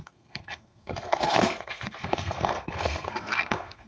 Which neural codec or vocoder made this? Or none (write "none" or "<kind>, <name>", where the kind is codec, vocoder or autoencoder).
codec, SNAC